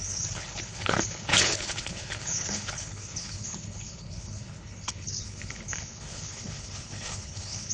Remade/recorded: remade